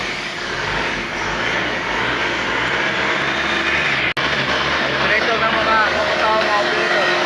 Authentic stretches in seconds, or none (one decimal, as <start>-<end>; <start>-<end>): 2.2-5.0